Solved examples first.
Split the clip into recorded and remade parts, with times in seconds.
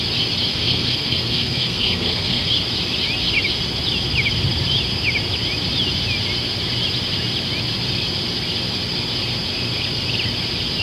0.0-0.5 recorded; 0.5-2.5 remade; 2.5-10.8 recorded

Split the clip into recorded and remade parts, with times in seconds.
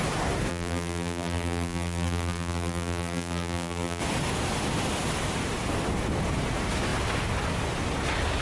0.0-0.5 recorded; 0.5-4.0 remade; 4.0-8.4 recorded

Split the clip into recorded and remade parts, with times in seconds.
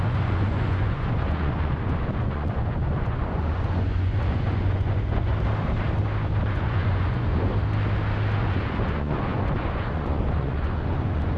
0.0-5.3 remade; 5.3-6.5 recorded; 6.5-7.5 remade; 7.5-8.4 recorded; 8.4-11.4 remade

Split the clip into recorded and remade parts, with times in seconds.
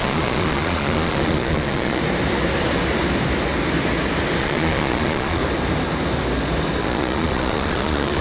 0.0-2.0 remade; 2.0-4.4 recorded; 4.4-5.4 remade; 5.4-6.8 recorded; 6.8-8.2 remade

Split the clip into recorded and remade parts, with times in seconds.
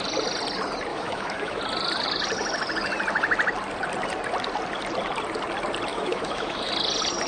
0.0-0.9 recorded; 0.9-1.6 remade; 1.6-5.9 recorded; 5.9-6.7 remade; 6.7-7.3 recorded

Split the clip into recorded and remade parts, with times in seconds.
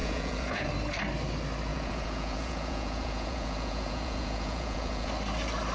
0.0-0.7 remade; 0.7-1.7 recorded; 1.7-5.1 remade; 5.1-5.7 recorded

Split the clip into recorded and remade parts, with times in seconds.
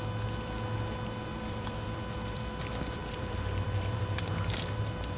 0.0-1.3 recorded; 1.3-4.2 remade; 4.2-5.2 recorded